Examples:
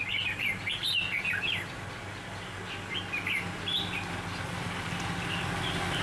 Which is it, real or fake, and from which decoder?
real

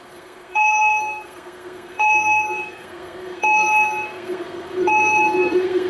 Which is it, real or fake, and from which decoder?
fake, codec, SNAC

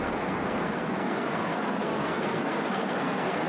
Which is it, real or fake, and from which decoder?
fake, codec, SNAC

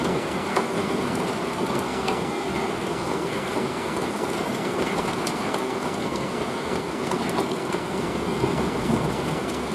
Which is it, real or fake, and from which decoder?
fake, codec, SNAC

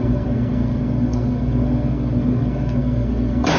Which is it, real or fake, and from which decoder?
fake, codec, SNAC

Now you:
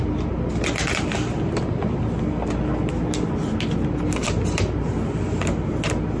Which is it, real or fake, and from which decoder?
real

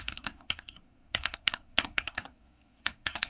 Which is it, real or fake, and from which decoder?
fake, codec, SNAC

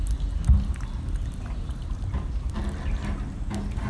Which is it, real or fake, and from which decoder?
real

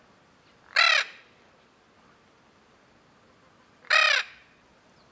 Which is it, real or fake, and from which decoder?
real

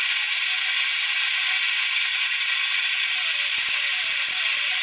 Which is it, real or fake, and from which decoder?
real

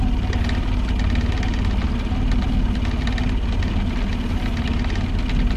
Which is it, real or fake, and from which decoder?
real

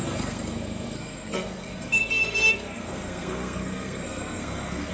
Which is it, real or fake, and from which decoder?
fake, codec, SNAC